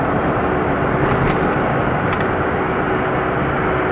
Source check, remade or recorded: recorded